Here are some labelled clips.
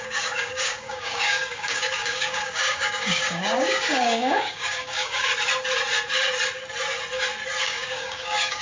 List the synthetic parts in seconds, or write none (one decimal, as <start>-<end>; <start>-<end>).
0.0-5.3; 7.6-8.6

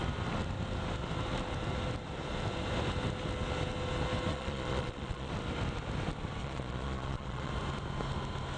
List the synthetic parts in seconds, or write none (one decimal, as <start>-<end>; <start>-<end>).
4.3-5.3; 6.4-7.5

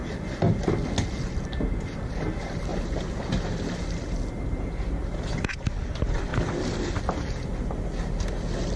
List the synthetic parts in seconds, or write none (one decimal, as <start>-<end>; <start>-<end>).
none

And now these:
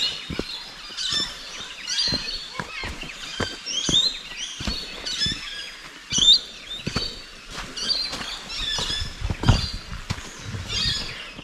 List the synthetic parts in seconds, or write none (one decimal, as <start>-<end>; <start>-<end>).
0.9-3.3

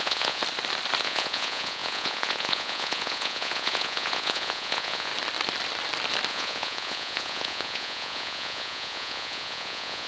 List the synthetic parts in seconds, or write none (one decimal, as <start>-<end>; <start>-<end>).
0.0-0.4; 1.0-5.1; 6.3-10.1

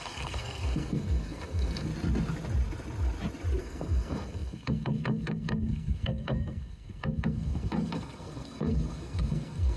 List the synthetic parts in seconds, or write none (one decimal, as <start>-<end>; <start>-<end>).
0.0-1.9; 3.6-9.8

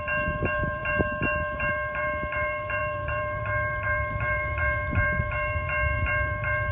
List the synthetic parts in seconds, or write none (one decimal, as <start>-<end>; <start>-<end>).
0.0-6.7

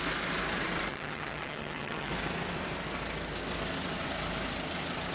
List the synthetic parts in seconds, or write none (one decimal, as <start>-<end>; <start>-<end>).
0.9-2.1